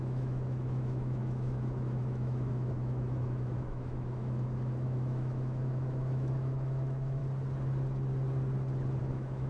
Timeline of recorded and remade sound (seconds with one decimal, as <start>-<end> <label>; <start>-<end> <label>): 0.0-7.2 remade; 7.2-9.0 recorded; 9.0-9.5 remade

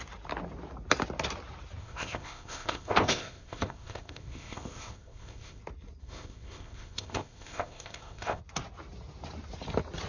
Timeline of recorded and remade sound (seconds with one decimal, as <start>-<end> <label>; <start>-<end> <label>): 0.0-1.8 recorded; 1.8-5.6 remade; 5.6-6.0 recorded; 6.0-8.4 remade; 8.4-10.1 recorded

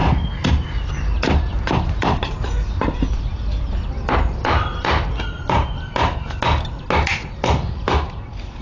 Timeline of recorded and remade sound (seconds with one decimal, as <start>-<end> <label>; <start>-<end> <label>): 0.0-1.5 recorded; 1.5-5.2 remade; 5.2-8.6 recorded

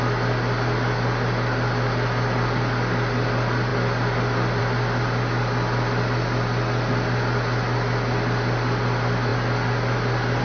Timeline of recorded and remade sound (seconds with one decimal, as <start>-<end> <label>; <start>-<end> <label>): 0.0-10.4 recorded

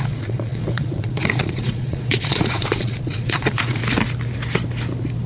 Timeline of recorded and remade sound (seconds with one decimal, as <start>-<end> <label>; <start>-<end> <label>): 0.0-3.8 remade; 3.8-5.3 recorded

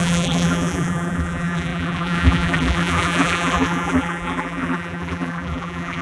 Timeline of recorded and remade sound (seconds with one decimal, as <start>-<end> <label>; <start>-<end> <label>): 0.0-6.0 remade